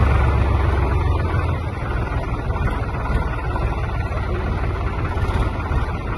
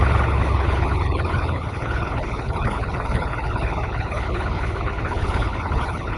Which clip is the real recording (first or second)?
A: first